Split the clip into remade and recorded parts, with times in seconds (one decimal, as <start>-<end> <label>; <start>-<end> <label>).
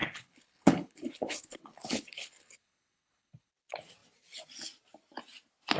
0.0-3.5 remade; 3.5-5.8 recorded